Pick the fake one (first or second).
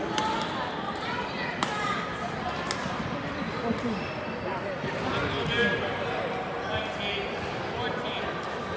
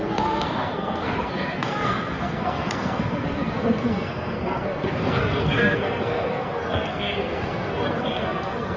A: second